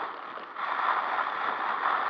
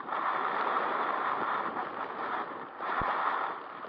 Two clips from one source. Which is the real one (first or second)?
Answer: first